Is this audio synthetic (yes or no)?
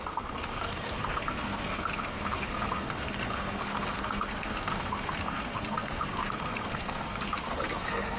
yes